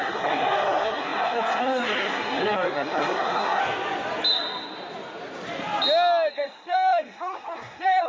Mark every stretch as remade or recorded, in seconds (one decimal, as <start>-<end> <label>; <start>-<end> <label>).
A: 0.0-3.6 remade; 3.6-6.3 recorded; 6.3-8.1 remade